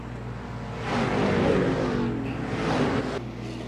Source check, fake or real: real